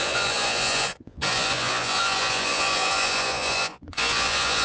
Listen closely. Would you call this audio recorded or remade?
remade